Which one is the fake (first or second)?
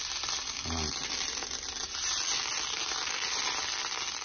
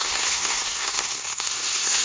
second